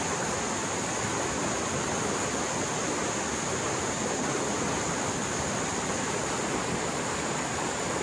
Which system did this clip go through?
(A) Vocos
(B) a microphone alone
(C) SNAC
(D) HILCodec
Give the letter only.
B